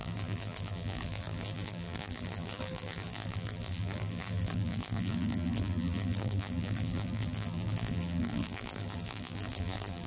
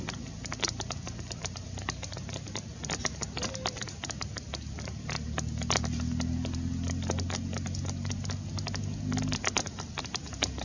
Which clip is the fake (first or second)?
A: first